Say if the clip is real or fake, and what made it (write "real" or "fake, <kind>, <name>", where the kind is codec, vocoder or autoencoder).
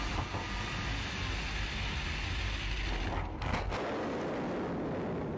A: real